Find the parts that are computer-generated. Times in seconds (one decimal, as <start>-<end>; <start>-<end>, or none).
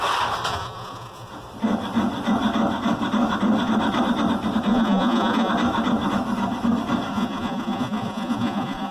0.5-1.3; 4.7-5.5; 7.1-8.9